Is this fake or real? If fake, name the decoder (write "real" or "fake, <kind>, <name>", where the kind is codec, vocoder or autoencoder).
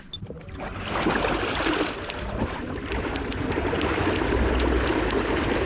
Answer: real